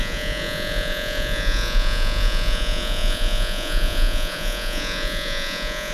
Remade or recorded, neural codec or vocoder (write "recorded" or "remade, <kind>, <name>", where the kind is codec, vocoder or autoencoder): remade, vocoder, Vocos